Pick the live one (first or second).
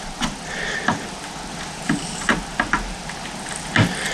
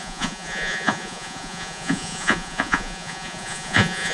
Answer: first